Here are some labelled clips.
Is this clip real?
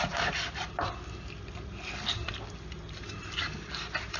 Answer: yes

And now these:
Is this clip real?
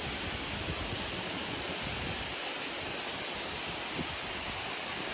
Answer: yes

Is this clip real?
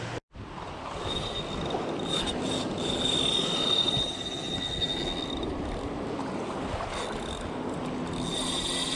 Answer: yes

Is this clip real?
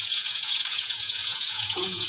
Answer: no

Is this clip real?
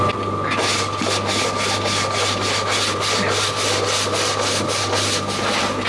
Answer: yes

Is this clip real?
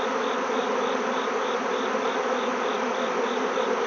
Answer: yes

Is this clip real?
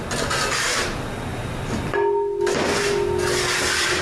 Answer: yes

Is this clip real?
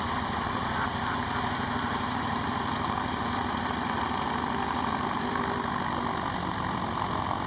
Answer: no